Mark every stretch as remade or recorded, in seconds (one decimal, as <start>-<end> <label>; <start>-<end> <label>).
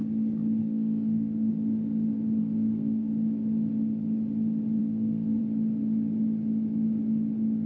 0.0-0.6 recorded; 0.6-1.5 remade; 1.5-2.4 recorded; 2.4-3.1 remade; 3.1-4.8 recorded; 4.8-5.4 remade; 5.4-7.7 recorded